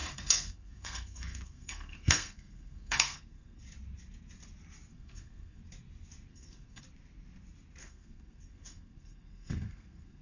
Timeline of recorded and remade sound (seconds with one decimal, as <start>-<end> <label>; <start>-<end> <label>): 0.0-3.6 remade; 3.6-4.9 recorded; 4.9-5.6 remade; 5.6-6.3 recorded; 6.3-6.8 remade; 6.8-7.8 recorded; 7.8-10.2 remade